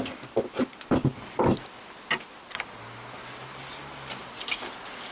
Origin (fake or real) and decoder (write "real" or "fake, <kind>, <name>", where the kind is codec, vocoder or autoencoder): real